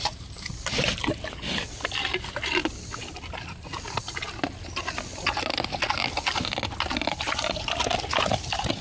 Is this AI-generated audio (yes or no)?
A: no